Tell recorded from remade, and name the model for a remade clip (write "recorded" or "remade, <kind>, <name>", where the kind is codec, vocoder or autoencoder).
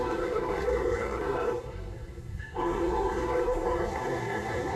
remade, codec, SNAC